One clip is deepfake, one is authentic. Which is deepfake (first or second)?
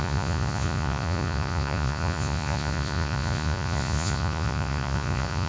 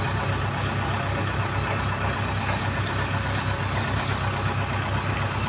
first